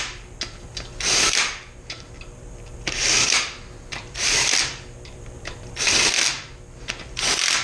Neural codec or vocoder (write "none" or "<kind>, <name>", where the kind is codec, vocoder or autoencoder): vocoder, BigVGAN v2